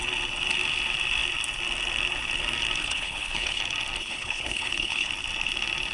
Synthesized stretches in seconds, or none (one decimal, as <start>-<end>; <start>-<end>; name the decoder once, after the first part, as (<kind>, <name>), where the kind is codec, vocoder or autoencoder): 2.8-3.6 (codec, HILCodec); 4.0-5.1